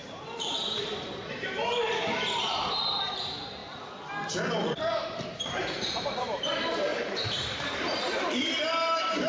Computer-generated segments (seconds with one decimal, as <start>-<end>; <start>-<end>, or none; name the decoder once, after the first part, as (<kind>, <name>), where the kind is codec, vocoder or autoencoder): 0.0-3.6 (vocoder, BigVGAN v2); 5.0-9.3